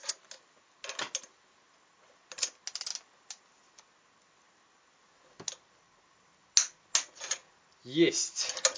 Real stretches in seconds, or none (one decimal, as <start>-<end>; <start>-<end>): 0.0-8.8

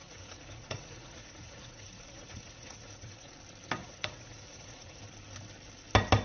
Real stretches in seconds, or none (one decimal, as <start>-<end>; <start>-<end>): 3.3-3.8; 5.0-6.2

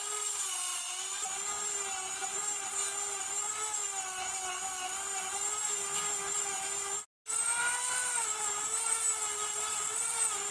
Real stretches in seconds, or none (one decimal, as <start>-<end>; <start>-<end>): 0.0-2.2; 3.2-7.6

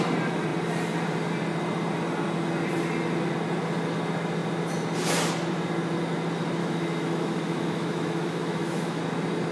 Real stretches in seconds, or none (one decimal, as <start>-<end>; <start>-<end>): 0.0-6.6; 9.0-9.5

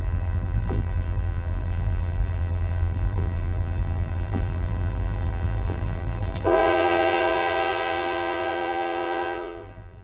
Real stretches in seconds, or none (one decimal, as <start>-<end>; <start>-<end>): none

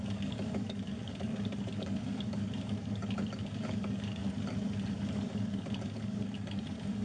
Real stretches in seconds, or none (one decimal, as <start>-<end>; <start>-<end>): 4.2-4.9

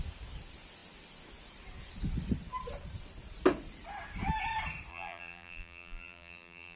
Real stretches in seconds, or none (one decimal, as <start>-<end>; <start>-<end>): 0.0-4.9

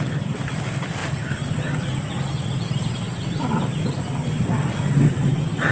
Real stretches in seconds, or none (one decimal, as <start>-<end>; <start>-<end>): 0.0-5.7